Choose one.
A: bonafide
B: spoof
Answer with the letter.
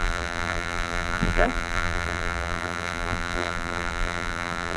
B